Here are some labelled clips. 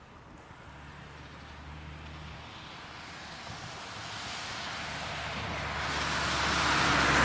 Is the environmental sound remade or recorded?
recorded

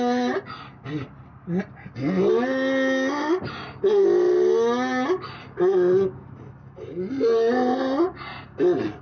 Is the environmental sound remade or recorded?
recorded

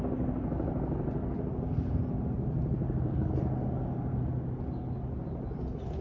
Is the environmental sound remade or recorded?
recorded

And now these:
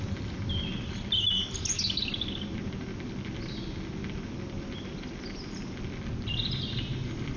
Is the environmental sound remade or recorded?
recorded